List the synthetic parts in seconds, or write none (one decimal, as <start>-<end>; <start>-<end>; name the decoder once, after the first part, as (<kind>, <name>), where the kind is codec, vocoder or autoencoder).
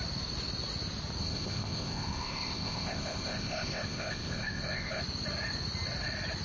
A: 1.2-5.0 (codec, ZipCodec)